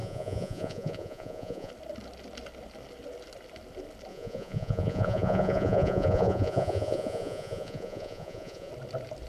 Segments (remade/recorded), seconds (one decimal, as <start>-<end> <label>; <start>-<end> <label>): 0.0-1.7 remade; 1.7-4.1 recorded; 4.1-8.7 remade; 8.7-9.3 recorded